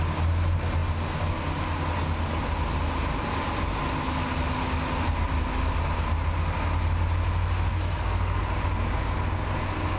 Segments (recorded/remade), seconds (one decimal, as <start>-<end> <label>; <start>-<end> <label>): 0.0-7.7 recorded; 7.7-8.4 remade; 8.4-10.0 recorded